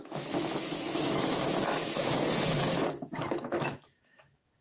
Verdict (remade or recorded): remade